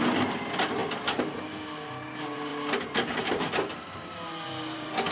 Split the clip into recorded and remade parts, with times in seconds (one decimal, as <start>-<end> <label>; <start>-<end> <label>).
0.0-0.8 recorded; 0.8-1.4 remade; 1.4-2.5 recorded; 2.5-5.1 remade